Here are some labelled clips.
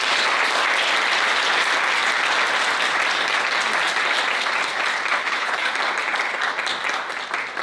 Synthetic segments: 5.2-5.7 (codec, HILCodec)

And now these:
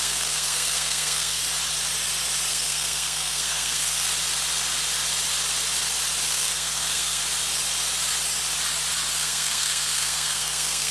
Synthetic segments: 0.0-1.4 (codec, SNAC); 2.5-4.1; 6.3-7.2; 9.2-10.9

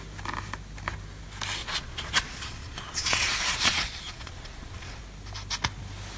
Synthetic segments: 1.6-5.0 (vocoder, Vocos)

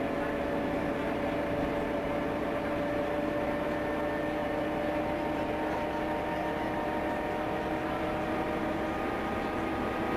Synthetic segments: none

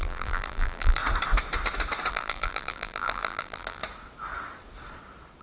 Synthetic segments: 0.0-1.0 (vocoder, BigVGAN v2); 2.1-3.8

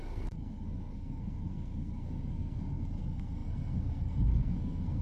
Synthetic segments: 0.0-5.0 (codec, SNAC)